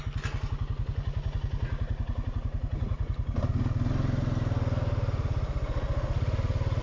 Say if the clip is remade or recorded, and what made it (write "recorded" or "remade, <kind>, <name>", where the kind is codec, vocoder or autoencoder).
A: recorded